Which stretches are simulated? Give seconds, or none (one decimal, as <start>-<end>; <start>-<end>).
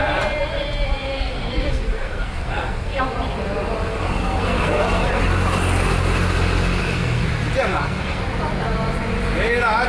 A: 1.1-3.0; 3.9-5.2; 6.8-7.3; 7.7-8.2